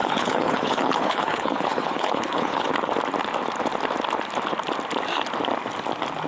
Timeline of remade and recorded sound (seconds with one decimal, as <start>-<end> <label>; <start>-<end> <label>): 0.0-2.7 remade; 2.7-6.3 recorded